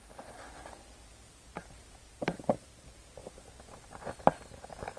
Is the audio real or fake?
real